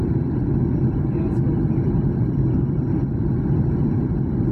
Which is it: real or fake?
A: real